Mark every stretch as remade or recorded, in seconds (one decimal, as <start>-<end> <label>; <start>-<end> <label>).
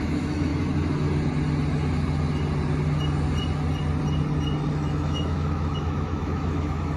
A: 0.0-0.5 remade; 0.5-4.7 recorded; 4.7-7.0 remade